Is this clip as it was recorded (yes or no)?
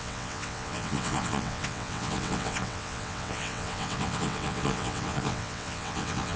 no